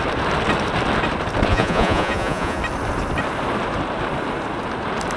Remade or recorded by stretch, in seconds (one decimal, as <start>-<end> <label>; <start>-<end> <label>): 0.0-1.5 recorded; 1.5-2.6 remade; 2.6-5.2 recorded